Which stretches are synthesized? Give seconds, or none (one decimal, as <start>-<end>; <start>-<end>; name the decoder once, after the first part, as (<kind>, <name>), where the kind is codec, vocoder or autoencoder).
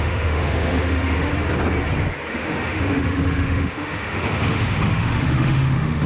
0.0-1.3 (autoencoder, DAC-VAE); 2.3-6.1